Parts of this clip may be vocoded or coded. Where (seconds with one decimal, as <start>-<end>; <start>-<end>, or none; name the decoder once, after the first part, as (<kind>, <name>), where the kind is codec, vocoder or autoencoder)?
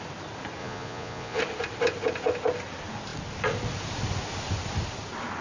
0.6-1.4 (vocoder, Vocos)